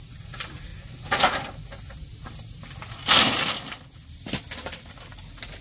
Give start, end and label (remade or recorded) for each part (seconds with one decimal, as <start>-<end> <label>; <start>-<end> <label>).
0.0-0.7 remade; 0.7-2.3 recorded; 2.3-5.6 remade